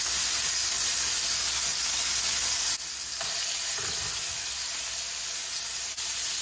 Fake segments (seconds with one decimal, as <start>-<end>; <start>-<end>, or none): none